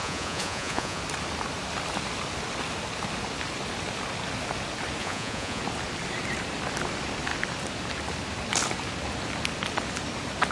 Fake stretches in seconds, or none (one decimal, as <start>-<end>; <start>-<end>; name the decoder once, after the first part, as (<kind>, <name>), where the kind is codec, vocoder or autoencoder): 0.0-1.0 (vocoder, Vocos); 5.0-5.6